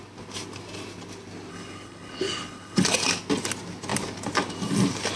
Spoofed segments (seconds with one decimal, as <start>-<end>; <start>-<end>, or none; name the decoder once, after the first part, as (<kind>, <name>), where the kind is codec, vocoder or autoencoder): 1.5-2.8 (codec, HILCodec)